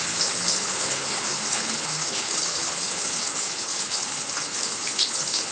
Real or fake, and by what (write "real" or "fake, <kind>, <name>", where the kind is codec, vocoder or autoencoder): fake, codec, HILCodec